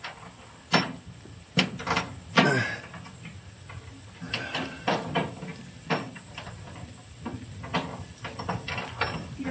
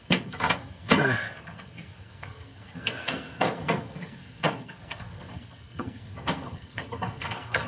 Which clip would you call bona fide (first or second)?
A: first